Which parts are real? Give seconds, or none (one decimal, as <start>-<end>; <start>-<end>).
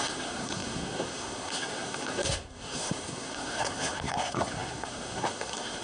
none